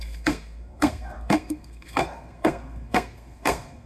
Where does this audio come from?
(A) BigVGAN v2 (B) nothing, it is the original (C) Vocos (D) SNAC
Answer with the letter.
D